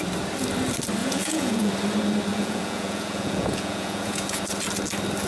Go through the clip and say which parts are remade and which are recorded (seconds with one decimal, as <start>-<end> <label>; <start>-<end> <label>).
0.0-1.0 recorded; 1.0-1.7 remade; 1.7-2.3 recorded; 2.3-4.4 remade; 4.4-5.3 recorded